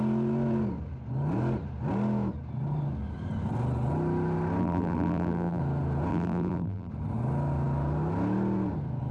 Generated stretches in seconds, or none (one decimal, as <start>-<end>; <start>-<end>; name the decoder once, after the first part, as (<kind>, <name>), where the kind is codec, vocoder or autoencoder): 4.6-5.6 (vocoder, BigVGAN v2); 6.1-6.9